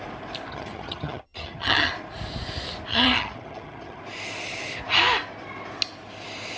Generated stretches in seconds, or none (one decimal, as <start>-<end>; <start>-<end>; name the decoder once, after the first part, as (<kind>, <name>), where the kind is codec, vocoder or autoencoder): 0.5-1.9 (vocoder, HiFi-GAN); 2.9-4.0